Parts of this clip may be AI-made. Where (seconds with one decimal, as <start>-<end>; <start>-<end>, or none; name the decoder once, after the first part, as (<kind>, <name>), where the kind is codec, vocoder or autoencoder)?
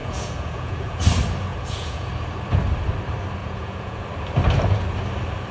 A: 0.0-1.0 (vocoder, Vocos); 1.5-2.1; 3.4-4.0